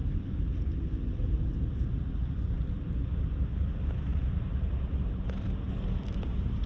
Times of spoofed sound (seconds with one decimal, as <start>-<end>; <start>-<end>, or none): 4.1-5.1